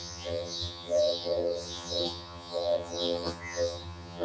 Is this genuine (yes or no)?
no